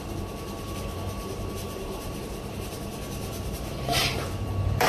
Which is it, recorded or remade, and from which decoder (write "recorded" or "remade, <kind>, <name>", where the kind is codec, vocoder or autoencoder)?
remade, vocoder, BigVGAN v2